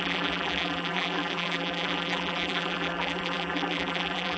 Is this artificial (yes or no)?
yes